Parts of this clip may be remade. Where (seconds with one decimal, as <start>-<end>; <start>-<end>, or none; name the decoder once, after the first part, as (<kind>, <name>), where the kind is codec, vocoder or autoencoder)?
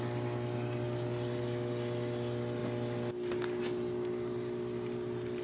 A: none